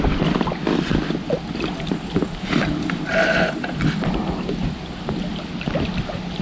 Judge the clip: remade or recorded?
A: recorded